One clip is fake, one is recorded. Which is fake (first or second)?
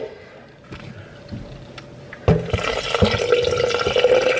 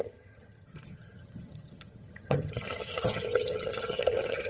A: second